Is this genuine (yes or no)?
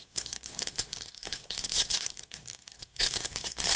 no